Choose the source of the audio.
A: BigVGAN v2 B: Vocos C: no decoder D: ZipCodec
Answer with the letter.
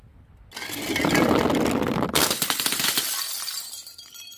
C